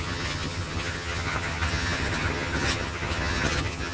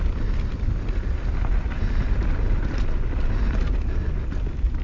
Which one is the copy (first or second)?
first